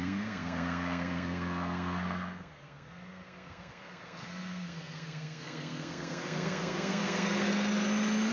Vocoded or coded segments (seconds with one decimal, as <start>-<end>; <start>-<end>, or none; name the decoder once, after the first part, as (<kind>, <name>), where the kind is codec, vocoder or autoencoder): 0.0-7.5 (codec, SNAC)